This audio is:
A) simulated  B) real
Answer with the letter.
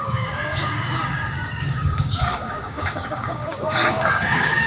A